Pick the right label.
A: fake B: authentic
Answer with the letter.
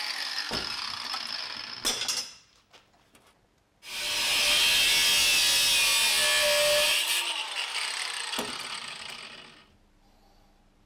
B